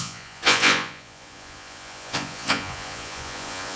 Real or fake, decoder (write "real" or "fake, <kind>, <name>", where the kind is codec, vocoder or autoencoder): fake, vocoder, Vocos